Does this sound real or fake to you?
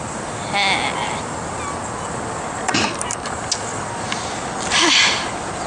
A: real